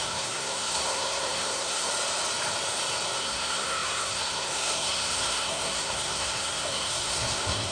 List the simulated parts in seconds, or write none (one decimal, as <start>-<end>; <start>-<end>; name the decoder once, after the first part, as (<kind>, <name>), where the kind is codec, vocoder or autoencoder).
0.0-1.9 (codec, SNAC); 3.2-7.7